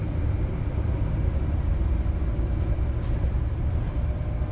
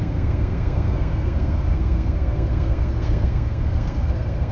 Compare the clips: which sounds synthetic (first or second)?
second